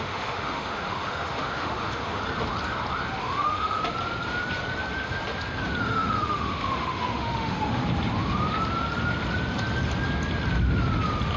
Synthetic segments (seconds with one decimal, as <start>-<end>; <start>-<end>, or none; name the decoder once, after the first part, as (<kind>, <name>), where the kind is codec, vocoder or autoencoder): 0.0-2.2 (autoencoder, DAC-VAE); 3.2-3.8; 5.8-7.8